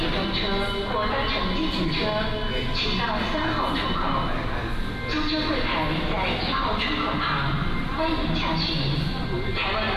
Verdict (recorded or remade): recorded